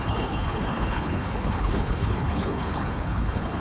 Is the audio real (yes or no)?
no